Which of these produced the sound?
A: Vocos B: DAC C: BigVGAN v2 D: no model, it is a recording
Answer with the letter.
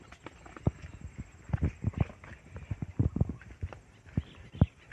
D